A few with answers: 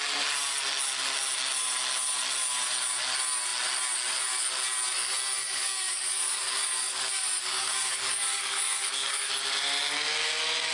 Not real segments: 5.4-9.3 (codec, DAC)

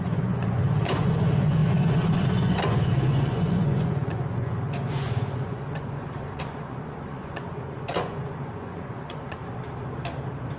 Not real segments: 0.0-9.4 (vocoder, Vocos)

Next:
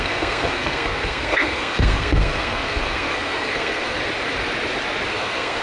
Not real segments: 0.0-4.0 (codec, SNAC); 5.1-5.6